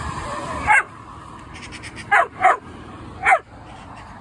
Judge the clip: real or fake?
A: fake